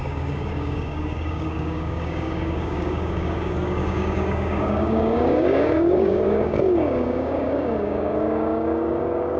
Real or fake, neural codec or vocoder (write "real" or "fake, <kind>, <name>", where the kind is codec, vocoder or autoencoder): fake, codec, DAC